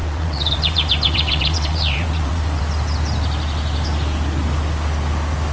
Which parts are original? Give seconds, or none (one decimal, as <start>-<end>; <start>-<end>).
2.6-5.5